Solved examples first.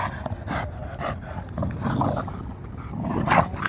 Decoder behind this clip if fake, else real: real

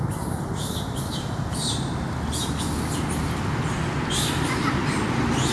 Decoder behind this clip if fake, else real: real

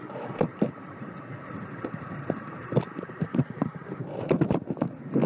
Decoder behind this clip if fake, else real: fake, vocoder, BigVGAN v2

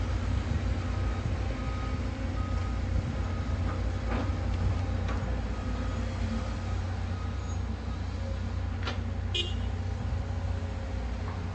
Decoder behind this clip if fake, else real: real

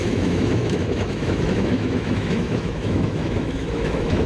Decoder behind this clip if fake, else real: fake, autoencoder, DAC-VAE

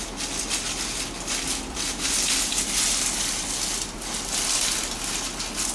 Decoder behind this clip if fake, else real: real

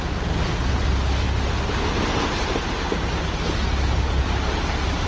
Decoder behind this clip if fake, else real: real